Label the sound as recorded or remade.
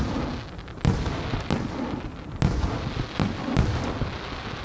recorded